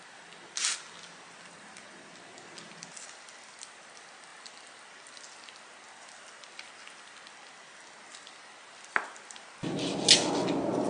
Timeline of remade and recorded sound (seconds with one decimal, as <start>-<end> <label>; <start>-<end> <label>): 0.0-10.9 recorded